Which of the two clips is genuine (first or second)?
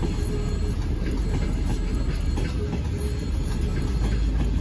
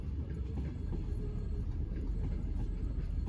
first